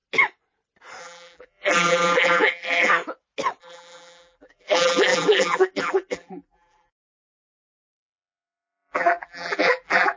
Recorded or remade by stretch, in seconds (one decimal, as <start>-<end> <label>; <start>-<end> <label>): 0.0-1.0 recorded; 1.0-2.9 remade; 2.9-3.6 recorded; 3.6-10.2 remade